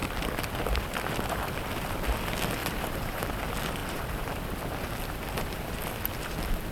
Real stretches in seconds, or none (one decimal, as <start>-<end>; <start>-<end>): 0.0-2.6; 3.2-3.8; 4.4-6.7